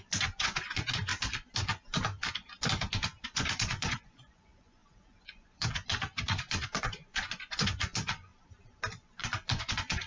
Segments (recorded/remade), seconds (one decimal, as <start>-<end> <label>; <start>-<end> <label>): 0.0-1.1 remade; 1.1-3.2 recorded; 3.2-8.3 remade; 8.3-8.9 recorded; 8.9-10.1 remade